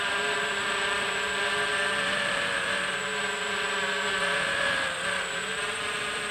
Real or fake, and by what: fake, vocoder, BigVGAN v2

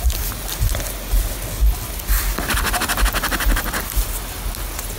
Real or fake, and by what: real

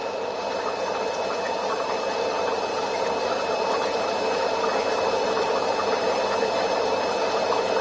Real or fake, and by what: fake, vocoder, BigVGAN v2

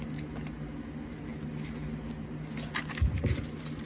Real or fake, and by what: real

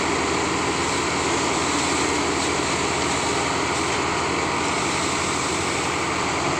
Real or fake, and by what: real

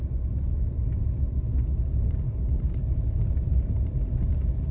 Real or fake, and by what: real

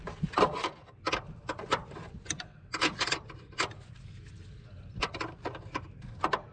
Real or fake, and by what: real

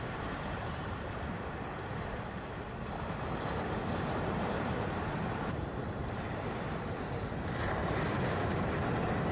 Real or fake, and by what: fake, vocoder, BigVGAN v2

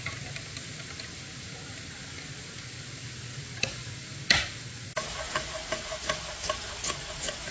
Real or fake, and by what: real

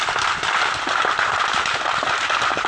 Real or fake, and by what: real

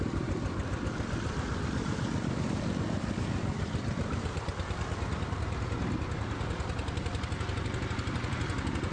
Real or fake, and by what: real